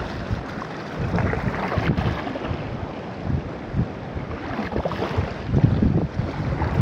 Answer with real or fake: real